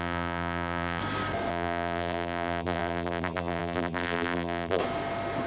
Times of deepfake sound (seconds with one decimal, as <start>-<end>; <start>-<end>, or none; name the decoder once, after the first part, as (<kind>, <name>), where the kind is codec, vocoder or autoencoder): 0.0-1.0 (vocoder, BigVGAN v2); 1.5-4.8